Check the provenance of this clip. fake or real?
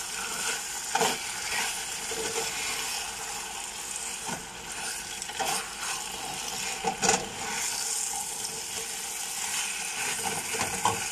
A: real